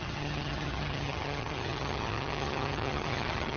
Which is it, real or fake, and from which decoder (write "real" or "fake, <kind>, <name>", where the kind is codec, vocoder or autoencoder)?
fake, vocoder, HiFi-GAN